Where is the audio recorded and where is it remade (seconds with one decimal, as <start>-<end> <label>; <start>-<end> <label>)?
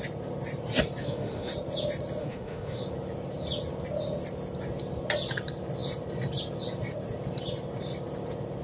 0.0-1.0 recorded; 1.0-1.5 remade; 1.5-2.2 recorded; 2.2-2.8 remade; 2.8-8.6 recorded